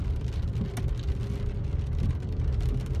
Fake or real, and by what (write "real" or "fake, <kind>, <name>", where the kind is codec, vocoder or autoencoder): real